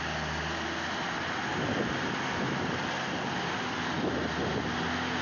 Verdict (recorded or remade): recorded